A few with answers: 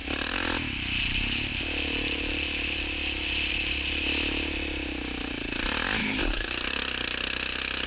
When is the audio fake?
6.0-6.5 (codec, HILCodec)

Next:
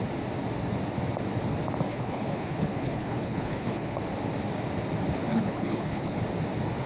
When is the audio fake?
1.9-4.0 (codec, HILCodec); 5.3-6.2